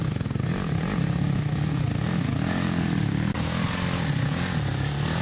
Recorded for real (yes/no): yes